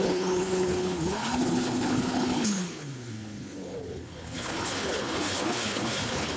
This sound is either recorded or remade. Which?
remade